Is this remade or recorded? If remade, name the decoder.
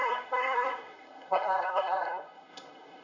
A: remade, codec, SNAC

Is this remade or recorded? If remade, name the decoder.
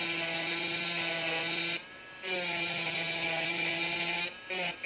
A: recorded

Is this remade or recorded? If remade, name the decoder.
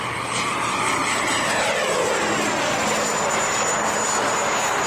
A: recorded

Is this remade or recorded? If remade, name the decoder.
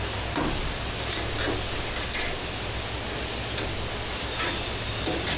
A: recorded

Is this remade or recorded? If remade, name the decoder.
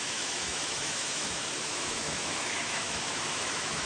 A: remade, autoencoder, DAC-VAE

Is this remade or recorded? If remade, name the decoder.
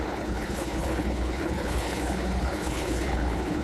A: remade, codec, HILCodec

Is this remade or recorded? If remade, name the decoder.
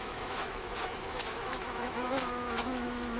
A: remade, autoencoder, DAC-VAE